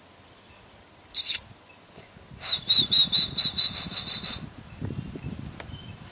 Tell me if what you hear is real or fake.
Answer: fake